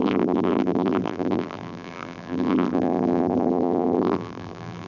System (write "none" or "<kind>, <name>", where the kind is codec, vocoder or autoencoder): vocoder, BigVGAN v2